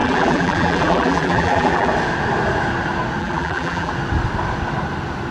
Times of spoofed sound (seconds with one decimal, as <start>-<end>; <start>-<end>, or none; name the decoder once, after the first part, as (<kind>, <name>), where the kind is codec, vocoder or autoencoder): 0.0-1.9 (vocoder, BigVGAN v2); 3.2-3.9